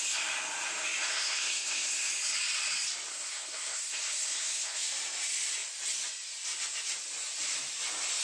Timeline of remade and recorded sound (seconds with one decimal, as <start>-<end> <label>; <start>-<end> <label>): 0.0-1.1 recorded; 1.1-2.1 remade; 2.1-3.1 recorded; 3.1-4.8 remade; 4.8-8.2 recorded